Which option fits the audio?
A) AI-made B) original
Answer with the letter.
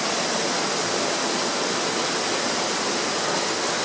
B